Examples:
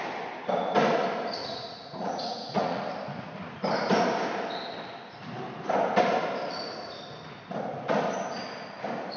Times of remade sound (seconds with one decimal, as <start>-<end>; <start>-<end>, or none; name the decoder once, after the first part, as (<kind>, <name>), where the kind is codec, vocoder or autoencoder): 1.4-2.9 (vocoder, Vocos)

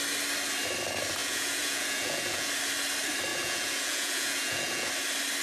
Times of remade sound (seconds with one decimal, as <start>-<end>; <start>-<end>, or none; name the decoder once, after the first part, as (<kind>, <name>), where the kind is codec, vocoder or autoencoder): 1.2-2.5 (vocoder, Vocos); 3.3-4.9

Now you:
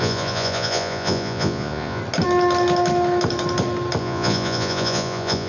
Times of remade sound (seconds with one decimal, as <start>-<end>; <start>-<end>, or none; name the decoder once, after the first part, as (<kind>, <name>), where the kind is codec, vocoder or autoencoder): 0.0-2.0 (vocoder, Vocos); 4.0-5.5